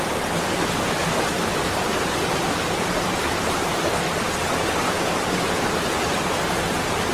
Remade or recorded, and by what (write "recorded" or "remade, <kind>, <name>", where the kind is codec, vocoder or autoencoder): recorded